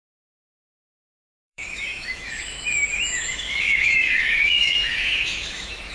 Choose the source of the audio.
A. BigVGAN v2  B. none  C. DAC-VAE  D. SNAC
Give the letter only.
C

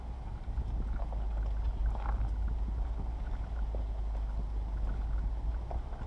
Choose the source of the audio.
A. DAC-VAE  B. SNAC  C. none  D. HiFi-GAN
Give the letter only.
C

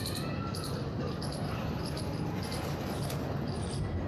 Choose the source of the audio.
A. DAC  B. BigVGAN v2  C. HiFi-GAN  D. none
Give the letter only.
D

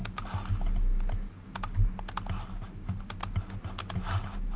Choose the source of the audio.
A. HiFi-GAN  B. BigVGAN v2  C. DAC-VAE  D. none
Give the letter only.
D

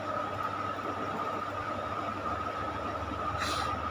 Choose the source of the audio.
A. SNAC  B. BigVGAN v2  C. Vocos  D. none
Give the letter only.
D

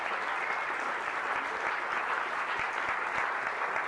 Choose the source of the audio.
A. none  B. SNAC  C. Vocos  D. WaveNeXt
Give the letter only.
A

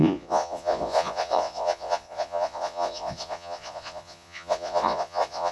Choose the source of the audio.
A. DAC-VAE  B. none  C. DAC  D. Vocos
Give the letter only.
D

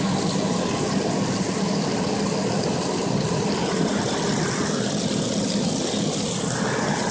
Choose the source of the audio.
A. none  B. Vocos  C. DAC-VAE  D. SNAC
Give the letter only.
A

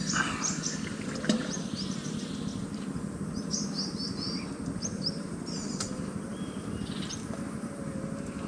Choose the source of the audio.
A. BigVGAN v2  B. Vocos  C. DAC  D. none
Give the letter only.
D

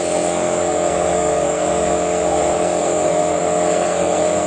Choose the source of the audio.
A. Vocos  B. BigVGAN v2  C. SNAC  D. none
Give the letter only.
C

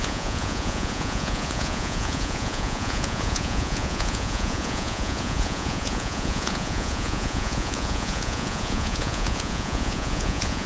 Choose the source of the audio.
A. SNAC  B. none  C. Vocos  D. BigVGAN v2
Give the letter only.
C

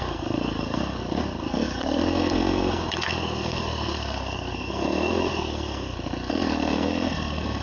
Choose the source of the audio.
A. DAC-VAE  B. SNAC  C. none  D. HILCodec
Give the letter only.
B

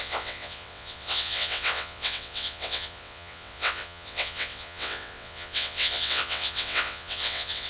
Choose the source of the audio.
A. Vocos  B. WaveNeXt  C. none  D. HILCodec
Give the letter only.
B